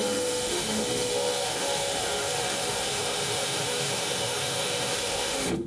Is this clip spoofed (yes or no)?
yes